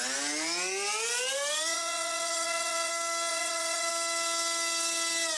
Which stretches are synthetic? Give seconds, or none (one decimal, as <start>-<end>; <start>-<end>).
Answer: 1.7-2.9; 3.3-3.9